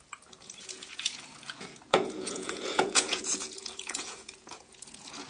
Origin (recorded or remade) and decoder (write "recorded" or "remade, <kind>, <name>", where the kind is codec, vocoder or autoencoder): remade, vocoder, Vocos